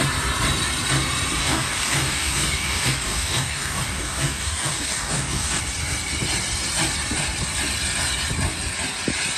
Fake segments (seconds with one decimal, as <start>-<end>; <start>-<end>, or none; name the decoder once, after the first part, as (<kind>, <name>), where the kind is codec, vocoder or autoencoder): 1.4-5.6 (codec, DAC)